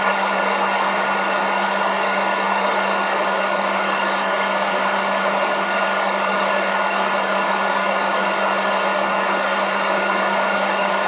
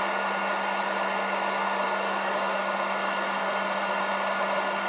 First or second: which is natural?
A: second